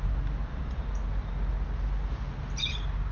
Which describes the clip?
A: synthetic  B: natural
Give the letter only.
B